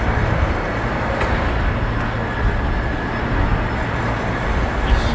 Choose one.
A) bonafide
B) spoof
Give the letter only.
A